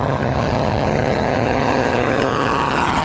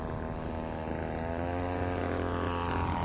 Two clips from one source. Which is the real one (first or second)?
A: second